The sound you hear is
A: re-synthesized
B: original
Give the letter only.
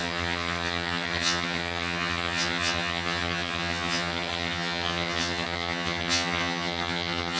A